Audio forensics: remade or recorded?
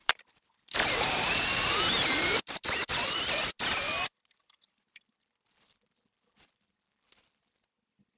remade